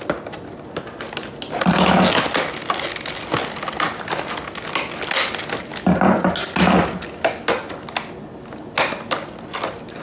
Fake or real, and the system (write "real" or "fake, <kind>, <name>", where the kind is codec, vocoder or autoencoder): real